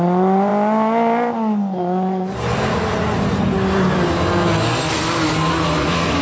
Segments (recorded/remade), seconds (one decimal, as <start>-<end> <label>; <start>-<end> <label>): 0.0-6.2 recorded